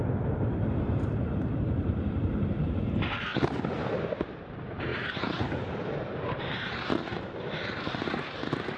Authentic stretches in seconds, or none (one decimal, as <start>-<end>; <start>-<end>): 3.3-4.0; 7.1-8.2